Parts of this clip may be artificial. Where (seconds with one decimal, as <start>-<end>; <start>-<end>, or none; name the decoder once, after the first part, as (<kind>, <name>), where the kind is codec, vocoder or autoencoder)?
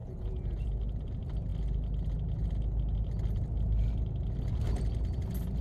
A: 0.0-0.8 (vocoder, Vocos)